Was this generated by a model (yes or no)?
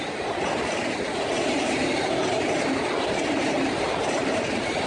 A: no